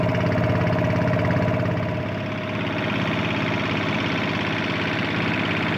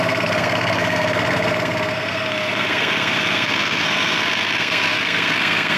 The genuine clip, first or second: first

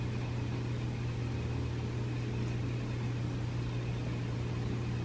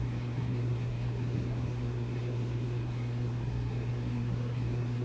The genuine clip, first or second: first